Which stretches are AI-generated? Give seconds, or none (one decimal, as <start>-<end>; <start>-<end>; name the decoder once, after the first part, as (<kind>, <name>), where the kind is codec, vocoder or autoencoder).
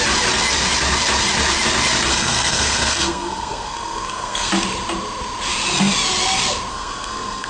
2.1-4.5 (codec, SNAC); 6.7-7.5